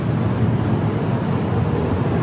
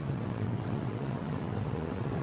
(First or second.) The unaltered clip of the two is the first